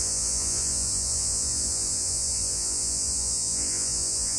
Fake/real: fake